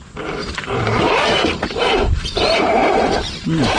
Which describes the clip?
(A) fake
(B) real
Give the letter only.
A